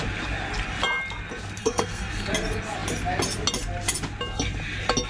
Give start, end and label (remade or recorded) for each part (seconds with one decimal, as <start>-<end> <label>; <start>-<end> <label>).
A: 0.0-1.6 recorded; 1.6-2.3 remade; 2.3-5.1 recorded